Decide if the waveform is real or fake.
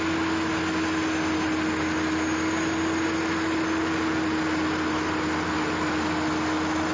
real